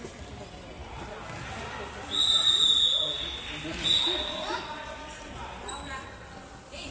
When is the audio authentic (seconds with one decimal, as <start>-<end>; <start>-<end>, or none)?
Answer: 0.0-6.9